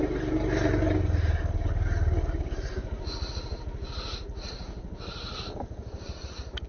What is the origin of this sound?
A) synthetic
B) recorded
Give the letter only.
B